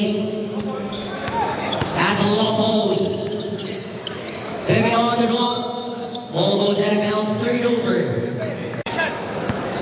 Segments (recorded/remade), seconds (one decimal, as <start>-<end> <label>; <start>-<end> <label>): 0.0-9.8 remade